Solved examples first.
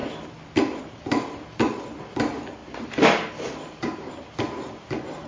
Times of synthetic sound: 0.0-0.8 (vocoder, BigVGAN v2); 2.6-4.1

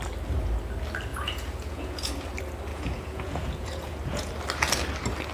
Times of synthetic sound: 1.1-2.1 (vocoder, Vocos); 2.7-4.3

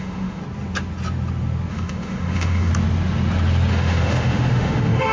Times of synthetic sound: 0.0-0.4 (autoencoder, DAC-VAE); 1.7-2.7; 3.7-5.1

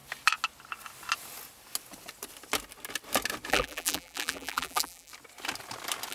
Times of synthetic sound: 3.5-5.1 (vocoder, BigVGAN v2)

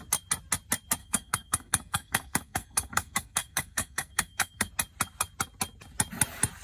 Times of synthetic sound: 1.0-4.7 (codec, SNAC)